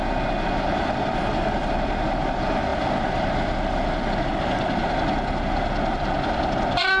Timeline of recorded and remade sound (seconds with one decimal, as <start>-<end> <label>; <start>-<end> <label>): 0.0-7.0 recorded